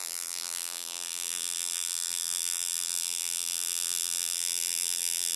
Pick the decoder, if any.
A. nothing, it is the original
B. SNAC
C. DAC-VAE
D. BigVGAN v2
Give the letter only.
D